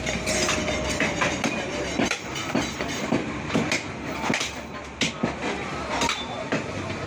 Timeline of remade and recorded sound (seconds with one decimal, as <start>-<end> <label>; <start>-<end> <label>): 0.0-2.4 recorded; 2.4-3.0 remade; 3.0-5.7 recorded; 5.7-7.1 remade